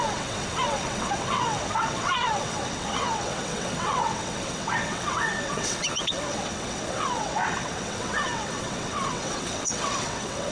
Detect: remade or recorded remade